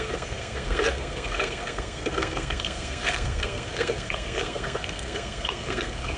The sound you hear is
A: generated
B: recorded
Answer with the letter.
A